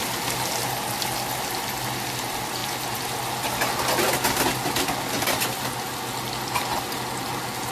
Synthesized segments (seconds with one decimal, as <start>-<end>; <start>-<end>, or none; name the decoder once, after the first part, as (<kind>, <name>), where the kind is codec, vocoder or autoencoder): none